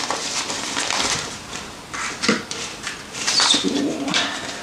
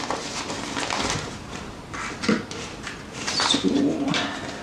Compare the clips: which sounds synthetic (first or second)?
first